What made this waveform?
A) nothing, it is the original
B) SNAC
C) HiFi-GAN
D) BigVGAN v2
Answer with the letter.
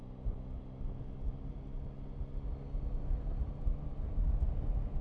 A